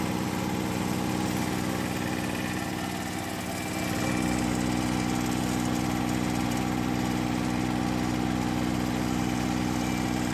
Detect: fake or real real